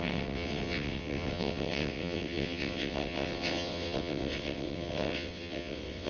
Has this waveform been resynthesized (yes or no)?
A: yes